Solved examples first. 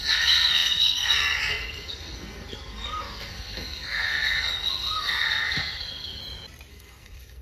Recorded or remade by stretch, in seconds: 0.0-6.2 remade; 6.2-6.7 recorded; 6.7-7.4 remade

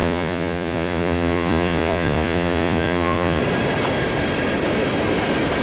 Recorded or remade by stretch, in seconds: 0.0-3.4 remade; 3.4-5.6 recorded

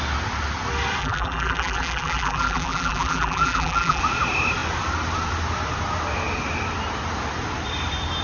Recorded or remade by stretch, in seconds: 0.0-1.0 recorded; 1.0-4.0 remade; 4.0-8.2 recorded

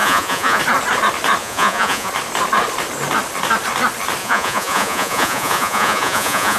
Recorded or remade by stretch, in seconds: 0.0-0.6 remade; 0.6-1.4 recorded; 1.4-2.1 remade; 2.1-4.2 recorded; 4.2-6.6 remade

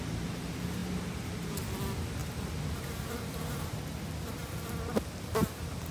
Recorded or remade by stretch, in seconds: 0.0-0.8 recorded; 0.8-1.5 remade; 1.5-2.2 recorded; 2.2-3.8 remade; 3.8-5.9 recorded

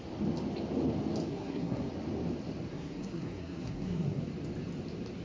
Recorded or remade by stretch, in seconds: 0.0-1.3 recorded; 1.3-1.9 remade; 1.9-2.7 recorded; 2.7-4.2 remade; 4.2-5.2 recorded